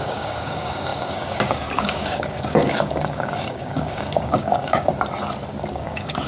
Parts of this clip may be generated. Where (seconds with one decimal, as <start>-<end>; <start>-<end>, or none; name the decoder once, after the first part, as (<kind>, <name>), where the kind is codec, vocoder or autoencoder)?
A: 0.0-4.9 (codec, DAC); 5.7-6.3